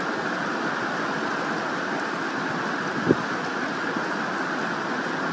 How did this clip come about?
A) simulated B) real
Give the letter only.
B